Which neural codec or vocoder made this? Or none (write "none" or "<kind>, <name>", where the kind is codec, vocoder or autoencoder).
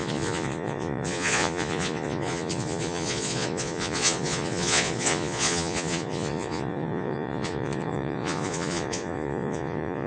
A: vocoder, Vocos